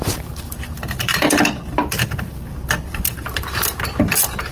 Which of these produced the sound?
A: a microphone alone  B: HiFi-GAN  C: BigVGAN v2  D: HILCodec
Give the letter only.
C